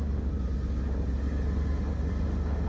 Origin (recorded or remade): recorded